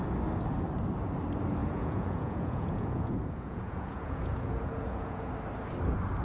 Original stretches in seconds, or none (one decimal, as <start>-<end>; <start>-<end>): 0.0-1.6; 5.3-6.2